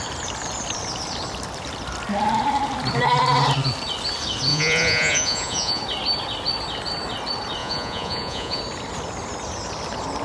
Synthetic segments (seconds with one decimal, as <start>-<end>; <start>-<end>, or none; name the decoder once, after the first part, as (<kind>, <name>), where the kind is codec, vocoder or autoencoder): 4.5-5.8 (vocoder, Vocos); 7.6-8.6